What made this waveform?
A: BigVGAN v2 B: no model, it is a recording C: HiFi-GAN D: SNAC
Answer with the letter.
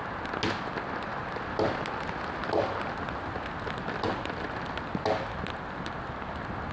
B